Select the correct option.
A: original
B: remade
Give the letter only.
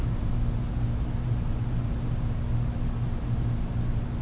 A